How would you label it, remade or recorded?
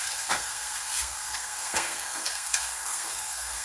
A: remade